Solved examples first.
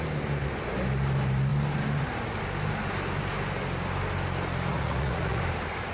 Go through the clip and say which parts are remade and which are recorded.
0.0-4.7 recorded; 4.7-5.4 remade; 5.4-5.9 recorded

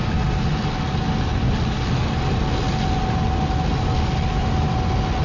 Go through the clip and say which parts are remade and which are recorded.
0.0-5.2 recorded

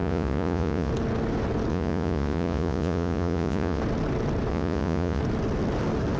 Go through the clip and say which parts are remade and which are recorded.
0.0-0.9 remade; 0.9-1.7 recorded; 1.7-3.8 remade; 3.8-4.5 recorded; 4.5-5.2 remade; 5.2-6.2 recorded

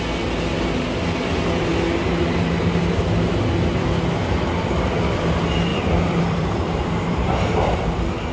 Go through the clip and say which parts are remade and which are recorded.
0.0-5.7 recorded; 5.7-7.6 remade; 7.6-8.3 recorded

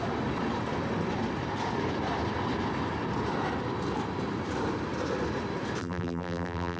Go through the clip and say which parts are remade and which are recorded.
0.0-5.8 recorded; 5.8-6.8 remade

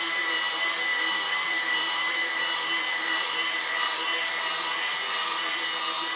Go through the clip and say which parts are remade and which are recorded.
0.0-0.9 recorded; 0.9-4.3 remade; 4.3-6.2 recorded

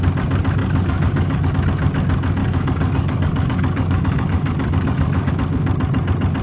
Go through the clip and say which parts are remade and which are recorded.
0.0-0.6 recorded; 0.6-1.5 remade; 1.5-2.4 recorded; 2.4-5.3 remade; 5.3-6.4 recorded

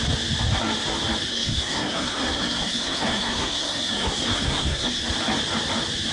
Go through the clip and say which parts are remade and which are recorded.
0.0-1.3 recorded; 1.3-5.0 remade; 5.0-6.1 recorded